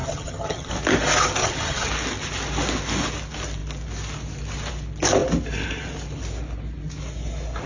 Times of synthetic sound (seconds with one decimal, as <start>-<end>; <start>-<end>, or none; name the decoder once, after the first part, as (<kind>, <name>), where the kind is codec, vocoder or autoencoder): 0.0-0.7 (vocoder, HiFi-GAN); 1.4-1.9